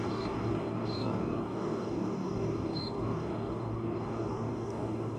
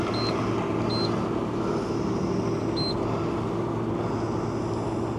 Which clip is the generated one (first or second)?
first